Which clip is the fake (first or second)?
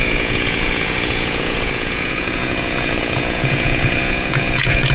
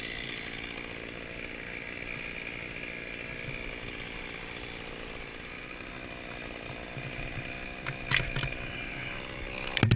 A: first